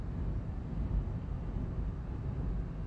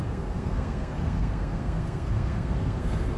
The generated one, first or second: second